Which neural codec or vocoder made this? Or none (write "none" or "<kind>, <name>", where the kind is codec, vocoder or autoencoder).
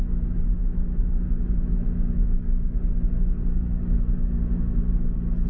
none